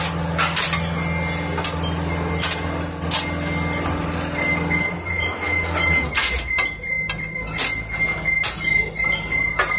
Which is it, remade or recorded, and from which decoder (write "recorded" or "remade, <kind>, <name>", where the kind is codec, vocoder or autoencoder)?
recorded